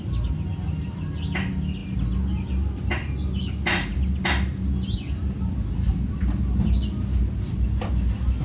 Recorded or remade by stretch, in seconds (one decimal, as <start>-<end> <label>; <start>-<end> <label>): 0.0-8.4 recorded